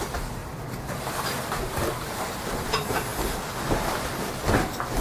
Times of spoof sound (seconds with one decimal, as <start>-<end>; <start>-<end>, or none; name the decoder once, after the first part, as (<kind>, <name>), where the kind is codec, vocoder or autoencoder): none